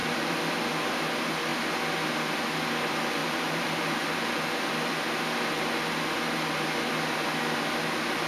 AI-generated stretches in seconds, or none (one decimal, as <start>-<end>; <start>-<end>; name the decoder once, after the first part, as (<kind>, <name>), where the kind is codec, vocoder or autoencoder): 0.0-0.6 (vocoder, BigVGAN v2); 3.2-4.7